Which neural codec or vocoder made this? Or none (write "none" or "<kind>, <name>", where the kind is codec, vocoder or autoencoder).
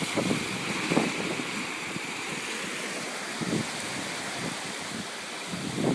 none